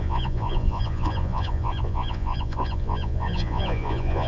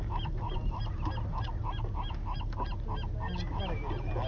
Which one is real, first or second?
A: second